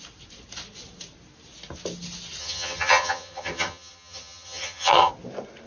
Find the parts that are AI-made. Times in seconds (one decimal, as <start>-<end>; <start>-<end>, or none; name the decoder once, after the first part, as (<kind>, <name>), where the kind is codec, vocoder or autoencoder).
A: 2.4-5.1 (vocoder, HiFi-GAN)